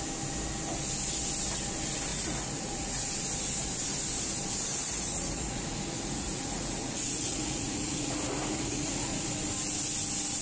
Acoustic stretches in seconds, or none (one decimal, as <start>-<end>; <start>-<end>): 0.0-2.1; 3.1-4.7; 9.3-10.4